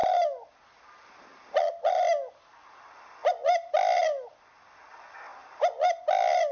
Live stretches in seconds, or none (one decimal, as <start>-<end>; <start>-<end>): 0.0-6.5